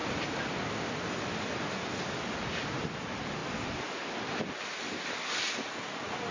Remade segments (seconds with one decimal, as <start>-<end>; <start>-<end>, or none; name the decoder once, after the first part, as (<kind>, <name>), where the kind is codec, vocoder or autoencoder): none

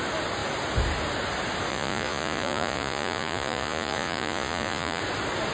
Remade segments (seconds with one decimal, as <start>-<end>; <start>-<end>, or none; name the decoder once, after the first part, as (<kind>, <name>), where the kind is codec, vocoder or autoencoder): 1.7-5.0 (vocoder, Vocos)

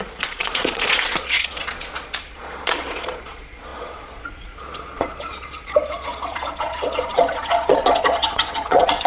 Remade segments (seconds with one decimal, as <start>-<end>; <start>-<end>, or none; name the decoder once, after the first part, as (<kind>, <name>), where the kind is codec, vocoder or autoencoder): 0.0-9.1 (vocoder, Vocos)

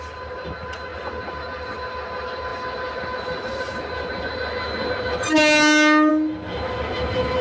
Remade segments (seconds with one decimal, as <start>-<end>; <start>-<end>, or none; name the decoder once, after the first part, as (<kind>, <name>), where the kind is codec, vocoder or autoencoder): none

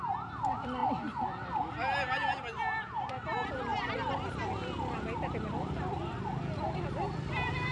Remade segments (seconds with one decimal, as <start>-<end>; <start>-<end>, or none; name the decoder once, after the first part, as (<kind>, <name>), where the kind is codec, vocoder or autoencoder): none

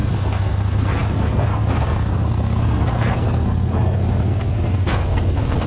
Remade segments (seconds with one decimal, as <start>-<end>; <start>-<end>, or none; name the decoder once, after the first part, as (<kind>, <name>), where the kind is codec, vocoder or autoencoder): 0.0-5.7 (codec, SNAC)

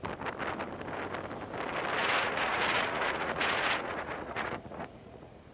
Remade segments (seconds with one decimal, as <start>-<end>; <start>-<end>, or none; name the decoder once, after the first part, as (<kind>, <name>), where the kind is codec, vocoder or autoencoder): 2.0-5.5 (vocoder, Vocos)

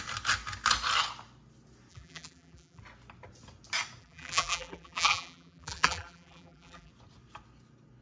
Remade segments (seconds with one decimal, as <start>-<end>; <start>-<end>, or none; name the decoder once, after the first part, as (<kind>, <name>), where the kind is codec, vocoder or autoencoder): 1.9-2.8 (vocoder, BigVGAN v2); 4.0-6.9